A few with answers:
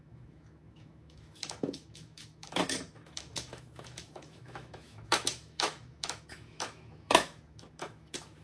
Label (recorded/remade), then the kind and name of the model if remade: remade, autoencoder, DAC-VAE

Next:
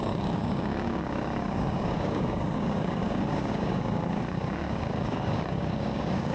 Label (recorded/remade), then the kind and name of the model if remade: remade, codec, DAC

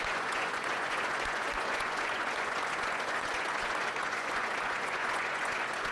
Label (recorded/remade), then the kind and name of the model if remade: remade, vocoder, Vocos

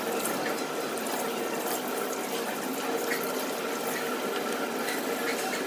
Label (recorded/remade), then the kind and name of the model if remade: recorded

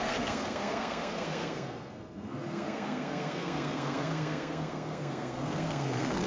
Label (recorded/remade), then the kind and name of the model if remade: remade, codec, SNAC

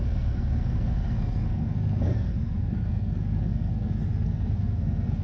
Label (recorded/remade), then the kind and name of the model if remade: remade, codec, SNAC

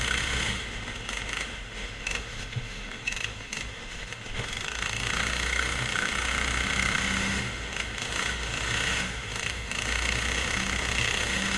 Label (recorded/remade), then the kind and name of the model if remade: remade, autoencoder, DAC-VAE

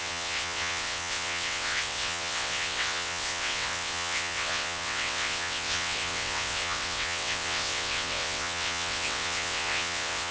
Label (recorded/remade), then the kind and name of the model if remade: remade, vocoder, WaveNeXt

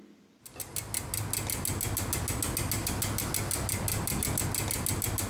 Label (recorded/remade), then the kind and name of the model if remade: recorded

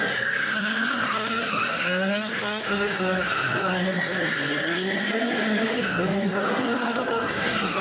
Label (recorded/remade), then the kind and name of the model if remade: remade, codec, SNAC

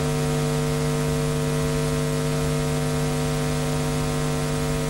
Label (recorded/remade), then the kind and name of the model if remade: recorded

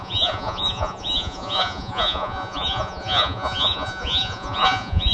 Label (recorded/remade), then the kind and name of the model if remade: remade, vocoder, Vocos